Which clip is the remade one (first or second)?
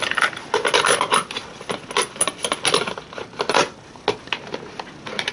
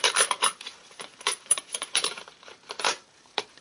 second